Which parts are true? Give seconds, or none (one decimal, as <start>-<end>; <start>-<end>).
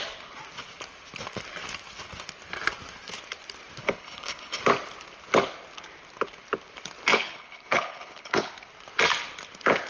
0.0-3.8; 4.6-7.1; 8.5-9.9